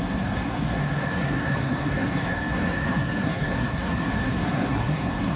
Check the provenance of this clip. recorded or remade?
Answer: remade